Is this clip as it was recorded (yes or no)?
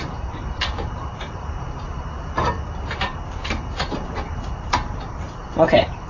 no